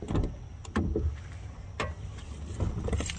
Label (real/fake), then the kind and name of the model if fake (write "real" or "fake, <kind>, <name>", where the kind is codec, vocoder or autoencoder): real